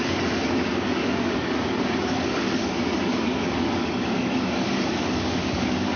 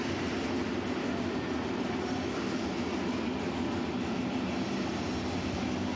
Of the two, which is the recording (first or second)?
second